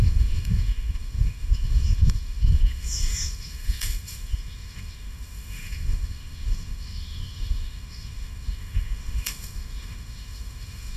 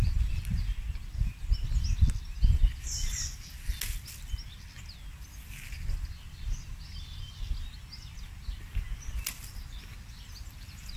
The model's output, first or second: first